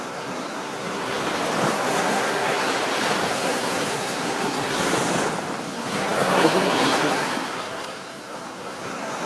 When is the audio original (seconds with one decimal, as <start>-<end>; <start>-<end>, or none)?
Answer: 1.2-1.7; 2.8-3.3; 4.9-5.6